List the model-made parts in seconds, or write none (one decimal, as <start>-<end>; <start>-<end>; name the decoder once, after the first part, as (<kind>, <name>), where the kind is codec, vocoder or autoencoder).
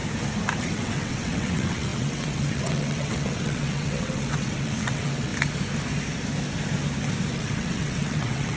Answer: 0.6-5.3 (vocoder, WaveNeXt); 7.3-8.6